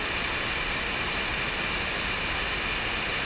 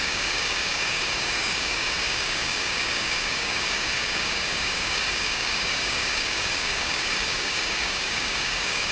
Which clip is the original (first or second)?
first